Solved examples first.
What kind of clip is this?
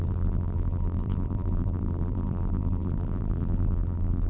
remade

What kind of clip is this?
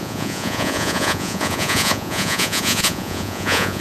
remade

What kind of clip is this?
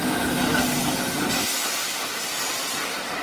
recorded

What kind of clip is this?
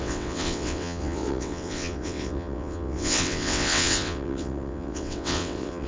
remade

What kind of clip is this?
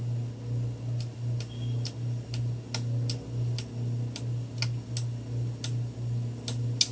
recorded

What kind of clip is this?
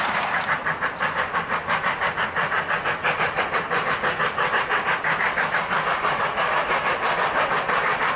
recorded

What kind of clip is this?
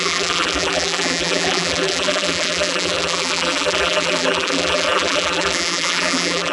remade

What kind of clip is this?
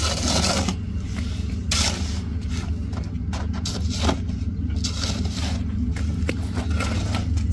recorded